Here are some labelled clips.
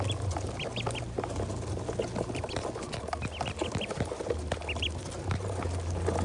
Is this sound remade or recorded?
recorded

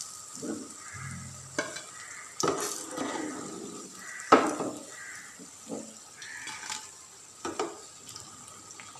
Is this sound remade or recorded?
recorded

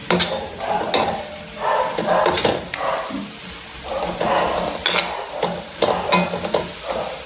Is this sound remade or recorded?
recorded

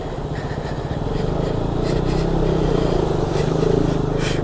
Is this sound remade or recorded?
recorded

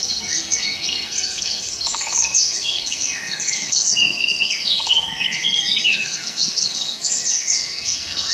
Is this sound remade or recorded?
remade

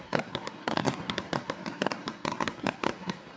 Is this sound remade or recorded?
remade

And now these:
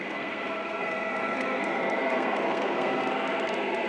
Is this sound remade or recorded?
remade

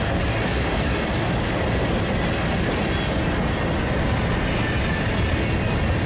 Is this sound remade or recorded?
recorded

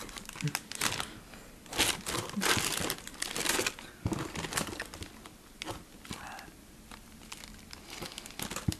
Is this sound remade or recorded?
recorded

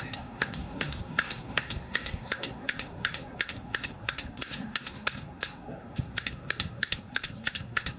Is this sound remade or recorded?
remade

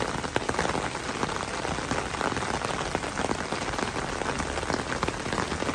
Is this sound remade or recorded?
recorded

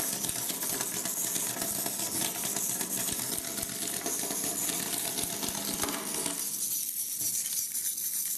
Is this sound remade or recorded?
recorded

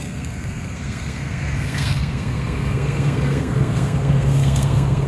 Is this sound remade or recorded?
remade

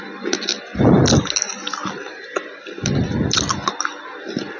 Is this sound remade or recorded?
recorded